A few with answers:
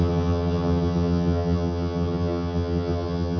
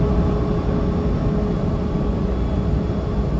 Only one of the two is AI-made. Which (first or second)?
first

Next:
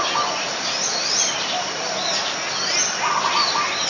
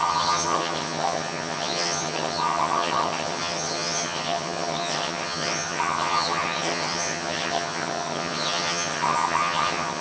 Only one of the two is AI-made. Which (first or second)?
second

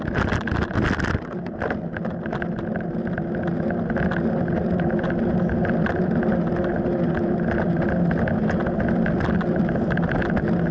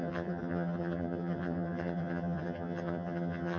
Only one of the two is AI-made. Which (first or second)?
second